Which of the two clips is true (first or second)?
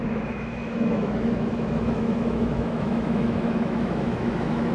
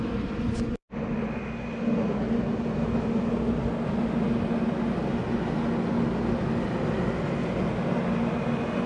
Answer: second